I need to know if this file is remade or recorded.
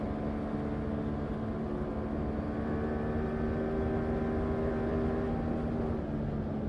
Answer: recorded